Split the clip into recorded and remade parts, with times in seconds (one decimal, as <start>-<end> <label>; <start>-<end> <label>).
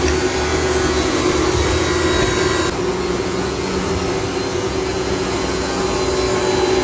0.0-0.5 recorded; 0.5-1.2 remade; 1.2-2.9 recorded; 2.9-3.9 remade; 3.9-4.5 recorded; 4.5-5.8 remade; 5.8-6.8 recorded